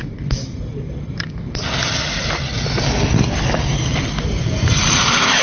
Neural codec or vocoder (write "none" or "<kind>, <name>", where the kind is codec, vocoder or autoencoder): none